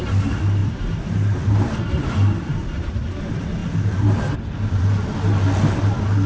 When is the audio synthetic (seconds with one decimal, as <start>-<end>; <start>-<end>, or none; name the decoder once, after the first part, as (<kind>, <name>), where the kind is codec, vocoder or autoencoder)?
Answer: none